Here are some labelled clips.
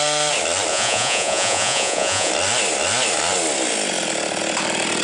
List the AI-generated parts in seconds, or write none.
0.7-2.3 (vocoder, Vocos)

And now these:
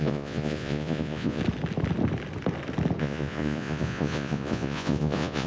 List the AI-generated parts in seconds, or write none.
0.0-1.4 (vocoder, Vocos); 3.0-5.5

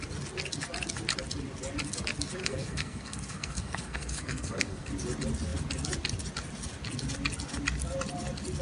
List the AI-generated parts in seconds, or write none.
2.4-4.9 (codec, SNAC)

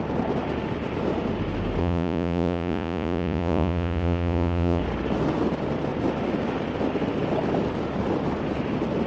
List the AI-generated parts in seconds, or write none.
1.8-4.8 (vocoder, Vocos)

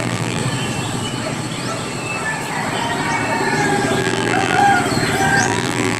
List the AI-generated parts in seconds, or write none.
0.0-0.4 (vocoder, BigVGAN v2); 4.0-4.6; 5.4-6.0